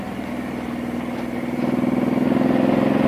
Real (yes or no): yes